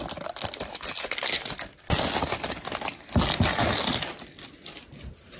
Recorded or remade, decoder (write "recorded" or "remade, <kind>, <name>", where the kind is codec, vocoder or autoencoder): recorded